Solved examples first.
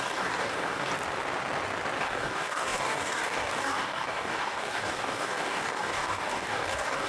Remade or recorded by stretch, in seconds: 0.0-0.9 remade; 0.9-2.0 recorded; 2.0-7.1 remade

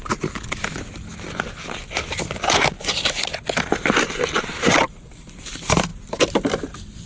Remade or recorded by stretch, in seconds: 0.0-5.9 recorded; 5.9-7.1 remade

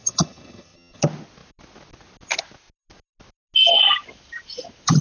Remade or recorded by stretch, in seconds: 0.0-1.0 remade; 1.0-5.0 recorded

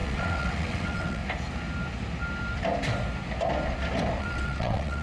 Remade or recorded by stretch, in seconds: 0.0-1.2 remade; 1.2-4.2 recorded; 4.2-5.0 remade

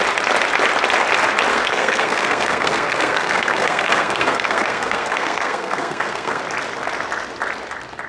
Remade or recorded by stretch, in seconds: 0.0-1.5 recorded; 1.5-6.4 remade; 6.4-8.1 recorded